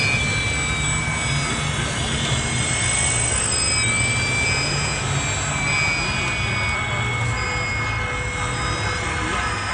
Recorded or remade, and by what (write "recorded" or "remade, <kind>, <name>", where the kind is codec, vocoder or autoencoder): recorded